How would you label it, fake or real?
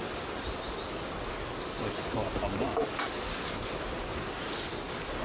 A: real